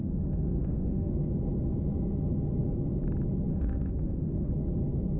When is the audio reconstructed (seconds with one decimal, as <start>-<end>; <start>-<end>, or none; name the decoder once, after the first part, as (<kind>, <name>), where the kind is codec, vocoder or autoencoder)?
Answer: 0.0-1.1 (autoencoder, DAC-VAE); 3.5-4.5